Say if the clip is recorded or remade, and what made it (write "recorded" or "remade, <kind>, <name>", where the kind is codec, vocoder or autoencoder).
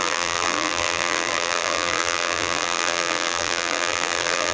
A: remade, vocoder, BigVGAN v2